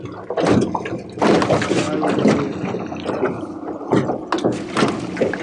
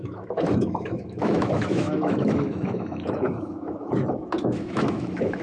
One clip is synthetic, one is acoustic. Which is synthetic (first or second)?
second